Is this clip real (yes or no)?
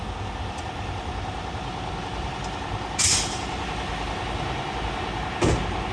yes